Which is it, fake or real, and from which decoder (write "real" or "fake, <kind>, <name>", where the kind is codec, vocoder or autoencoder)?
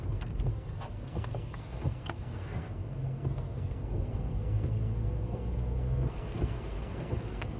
fake, codec, SNAC